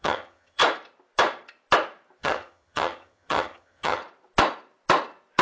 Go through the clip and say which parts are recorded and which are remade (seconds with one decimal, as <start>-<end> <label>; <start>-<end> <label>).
0.0-0.6 remade; 0.6-2.2 recorded; 2.2-4.0 remade; 4.0-5.4 recorded